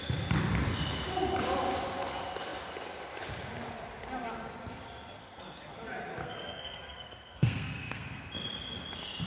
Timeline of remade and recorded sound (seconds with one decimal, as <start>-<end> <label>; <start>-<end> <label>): 0.0-5.2 recorded; 5.2-5.7 remade; 5.7-6.2 recorded; 6.2-8.2 remade; 8.2-9.3 recorded